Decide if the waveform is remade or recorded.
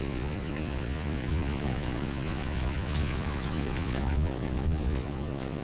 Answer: remade